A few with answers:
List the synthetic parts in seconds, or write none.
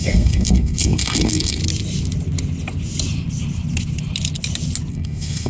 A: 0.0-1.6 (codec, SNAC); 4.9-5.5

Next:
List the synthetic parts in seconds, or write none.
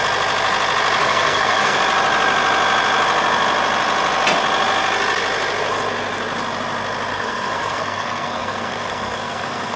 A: 1.0-1.8 (codec, SNAC); 7.1-9.8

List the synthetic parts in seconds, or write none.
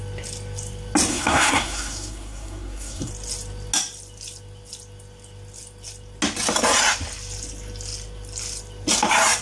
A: 1.1-3.1 (codec, SNAC)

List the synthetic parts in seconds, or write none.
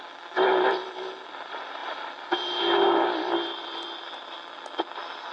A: none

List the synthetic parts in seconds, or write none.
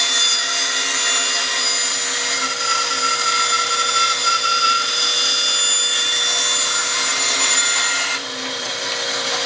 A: 4.2-5.0 (vocoder, BigVGAN v2); 7.1-8.7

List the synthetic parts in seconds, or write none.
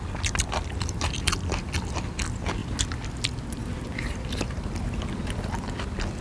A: none